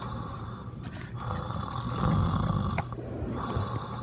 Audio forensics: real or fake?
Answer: real